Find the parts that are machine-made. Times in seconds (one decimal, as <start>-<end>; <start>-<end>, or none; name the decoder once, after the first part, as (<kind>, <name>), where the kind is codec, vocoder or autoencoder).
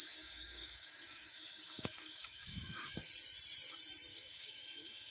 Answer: 0.0-3.1 (codec, DAC); 4.1-5.1